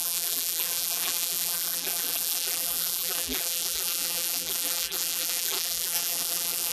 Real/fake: fake